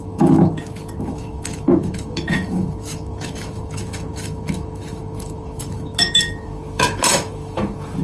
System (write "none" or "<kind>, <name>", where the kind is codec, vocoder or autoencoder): autoencoder, DAC-VAE